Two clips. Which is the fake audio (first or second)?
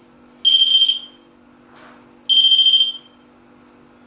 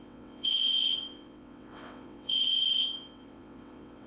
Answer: second